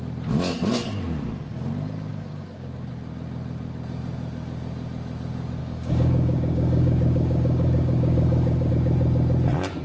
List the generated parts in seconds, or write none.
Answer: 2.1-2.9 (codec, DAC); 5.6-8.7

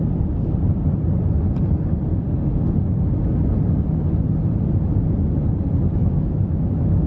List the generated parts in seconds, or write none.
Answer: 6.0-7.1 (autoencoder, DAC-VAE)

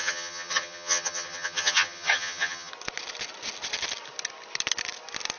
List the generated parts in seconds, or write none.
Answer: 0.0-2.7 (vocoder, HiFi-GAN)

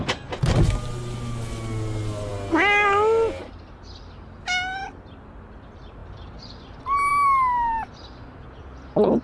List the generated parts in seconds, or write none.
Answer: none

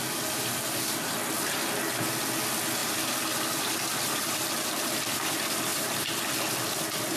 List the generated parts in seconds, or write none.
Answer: none

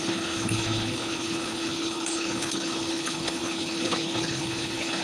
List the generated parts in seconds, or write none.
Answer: 0.0-5.0 (codec, HILCodec)

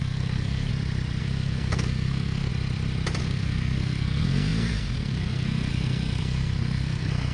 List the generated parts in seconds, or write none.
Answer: 0.0-0.7 (codec, SNAC); 1.2-2.5; 3.2-7.3